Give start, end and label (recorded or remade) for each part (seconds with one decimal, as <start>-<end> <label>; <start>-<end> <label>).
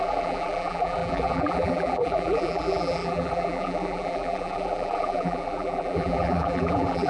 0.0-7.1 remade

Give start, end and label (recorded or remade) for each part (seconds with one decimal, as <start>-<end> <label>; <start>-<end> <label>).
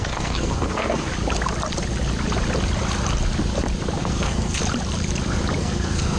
0.0-1.1 remade; 1.1-4.0 recorded; 4.0-4.6 remade; 4.6-5.6 recorded; 5.6-6.2 remade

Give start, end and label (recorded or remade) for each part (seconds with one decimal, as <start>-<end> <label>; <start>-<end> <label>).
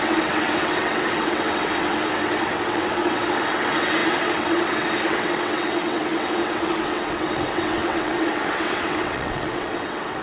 0.0-10.2 remade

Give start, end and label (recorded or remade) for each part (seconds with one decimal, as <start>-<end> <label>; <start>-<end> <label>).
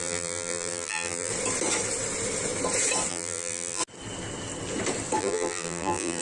0.0-1.3 remade; 1.3-3.1 recorded; 3.1-3.8 remade; 3.8-5.2 recorded; 5.2-6.2 remade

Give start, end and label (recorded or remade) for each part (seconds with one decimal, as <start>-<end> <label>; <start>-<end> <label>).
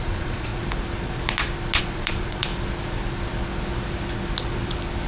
0.0-0.5 remade; 0.5-1.8 recorded; 1.8-2.5 remade; 2.5-5.1 recorded